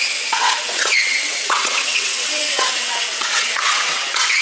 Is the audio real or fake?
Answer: fake